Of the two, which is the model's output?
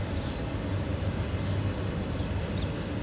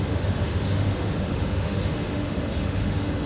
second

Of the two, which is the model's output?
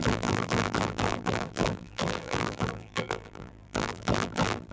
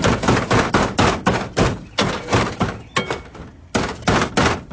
first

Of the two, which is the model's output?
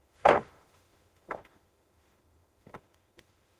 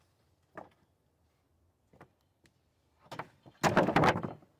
first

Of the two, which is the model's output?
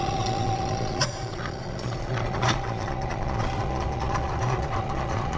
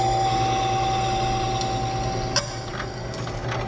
first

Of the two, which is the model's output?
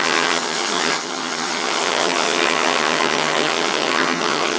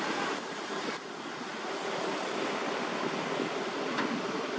first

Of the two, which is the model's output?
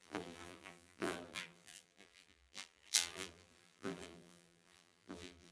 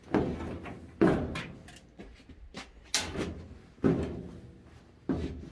first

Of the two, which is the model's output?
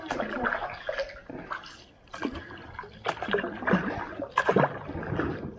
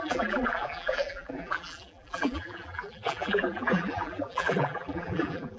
second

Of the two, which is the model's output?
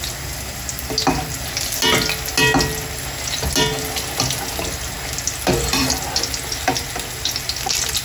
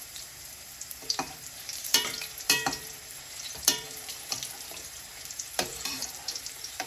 second